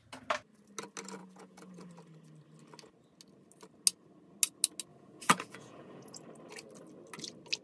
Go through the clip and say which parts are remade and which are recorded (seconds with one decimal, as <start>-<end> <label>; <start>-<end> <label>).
0.0-1.2 recorded; 1.2-1.9 remade; 1.9-4.9 recorded; 4.9-6.2 remade; 6.2-7.6 recorded